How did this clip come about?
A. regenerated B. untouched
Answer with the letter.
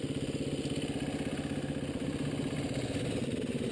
B